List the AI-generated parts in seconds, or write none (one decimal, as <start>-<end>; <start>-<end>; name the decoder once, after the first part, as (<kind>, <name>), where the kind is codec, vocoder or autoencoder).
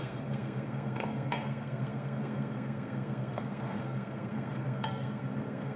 0.0-5.8 (codec, SNAC)